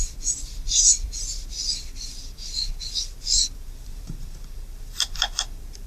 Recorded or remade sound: remade